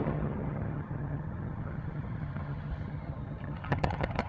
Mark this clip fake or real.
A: fake